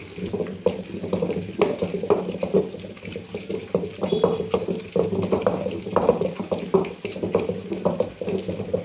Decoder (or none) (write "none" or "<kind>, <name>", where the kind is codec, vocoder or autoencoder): none